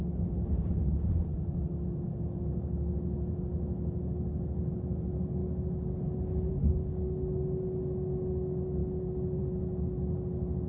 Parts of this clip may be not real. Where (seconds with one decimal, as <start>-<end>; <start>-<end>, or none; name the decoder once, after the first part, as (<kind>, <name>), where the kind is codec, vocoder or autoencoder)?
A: 3.5-4.0 (autoencoder, DAC-VAE)